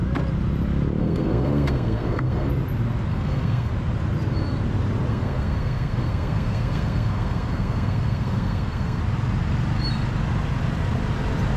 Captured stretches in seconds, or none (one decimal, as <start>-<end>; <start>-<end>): 0.0-1.0; 2.5-3.1; 3.7-5.1; 9.0-11.6